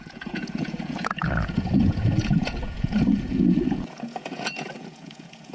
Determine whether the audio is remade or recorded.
remade